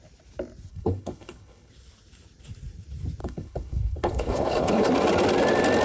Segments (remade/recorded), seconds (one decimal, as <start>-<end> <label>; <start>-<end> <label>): 0.0-0.7 recorded; 0.7-1.7 remade; 1.7-3.2 recorded; 3.2-4.9 remade; 4.9-5.8 recorded